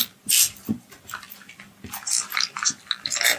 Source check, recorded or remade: recorded